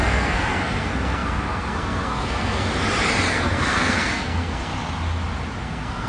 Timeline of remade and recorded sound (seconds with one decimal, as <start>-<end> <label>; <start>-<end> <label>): 0.0-2.7 remade; 2.7-3.3 recorded; 3.3-4.7 remade; 4.7-5.6 recorded; 5.6-6.1 remade